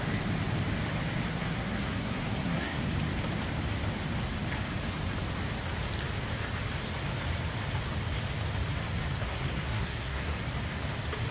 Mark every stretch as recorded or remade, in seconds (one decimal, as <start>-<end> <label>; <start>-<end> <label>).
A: 0.0-1.3 recorded; 1.3-2.8 remade; 2.8-9.3 recorded; 9.3-10.4 remade; 10.4-11.3 recorded